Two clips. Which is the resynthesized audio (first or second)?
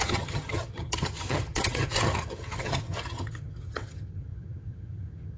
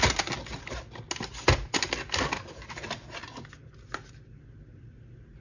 first